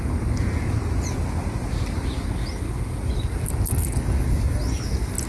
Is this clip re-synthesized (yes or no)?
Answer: no